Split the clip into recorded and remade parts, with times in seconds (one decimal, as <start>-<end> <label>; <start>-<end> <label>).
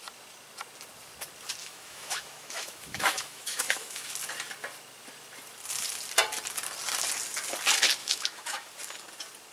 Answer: 0.0-1.6 recorded; 1.6-4.1 remade; 4.1-8.0 recorded; 8.0-8.7 remade; 8.7-9.5 recorded